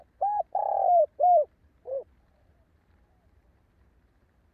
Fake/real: fake